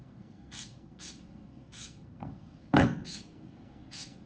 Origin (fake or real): fake